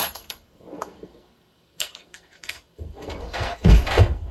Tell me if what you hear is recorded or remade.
remade